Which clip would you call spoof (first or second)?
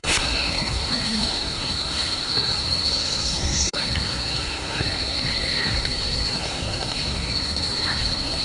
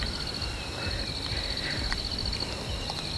first